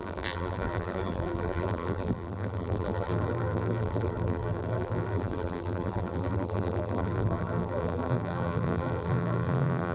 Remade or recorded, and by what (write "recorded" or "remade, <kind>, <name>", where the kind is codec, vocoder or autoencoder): remade, vocoder, BigVGAN v2